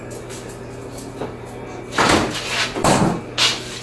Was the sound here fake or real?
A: real